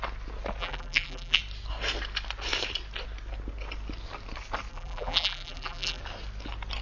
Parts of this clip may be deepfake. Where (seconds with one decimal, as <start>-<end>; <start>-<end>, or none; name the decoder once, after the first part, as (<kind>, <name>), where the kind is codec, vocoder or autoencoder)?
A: 0.6-1.4 (vocoder, BigVGAN v2); 4.7-6.0